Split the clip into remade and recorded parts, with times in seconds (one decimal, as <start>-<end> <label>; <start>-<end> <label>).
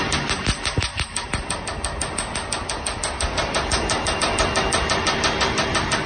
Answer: 0.0-6.1 recorded